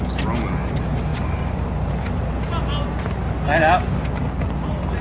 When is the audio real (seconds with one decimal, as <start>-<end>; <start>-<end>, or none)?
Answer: 0.0-5.0